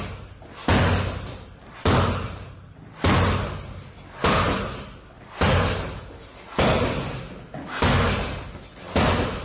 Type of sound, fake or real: real